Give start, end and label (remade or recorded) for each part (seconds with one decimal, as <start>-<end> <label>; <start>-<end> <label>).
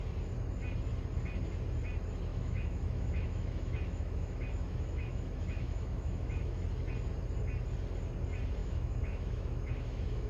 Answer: 0.0-2.3 recorded; 2.3-6.6 remade; 6.6-8.6 recorded; 8.6-10.3 remade